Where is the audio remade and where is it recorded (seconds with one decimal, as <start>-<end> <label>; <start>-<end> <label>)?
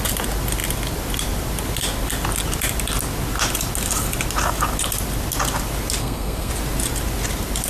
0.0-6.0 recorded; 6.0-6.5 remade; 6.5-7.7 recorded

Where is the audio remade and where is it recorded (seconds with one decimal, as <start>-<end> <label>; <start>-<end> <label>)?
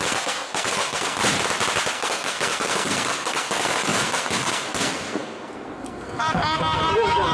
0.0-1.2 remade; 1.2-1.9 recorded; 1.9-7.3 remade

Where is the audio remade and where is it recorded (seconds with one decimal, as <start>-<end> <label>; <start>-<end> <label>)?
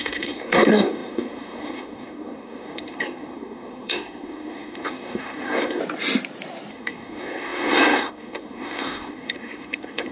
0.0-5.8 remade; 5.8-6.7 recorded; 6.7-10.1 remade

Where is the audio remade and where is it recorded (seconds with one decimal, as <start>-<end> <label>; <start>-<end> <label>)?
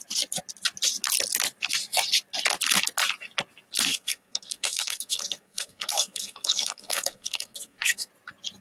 0.0-3.9 recorded; 3.9-8.1 remade; 8.1-8.6 recorded